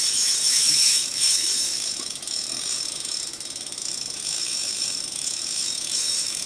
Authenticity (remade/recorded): remade